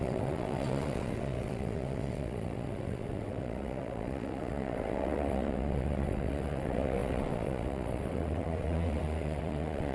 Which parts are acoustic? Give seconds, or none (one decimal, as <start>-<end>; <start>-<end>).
none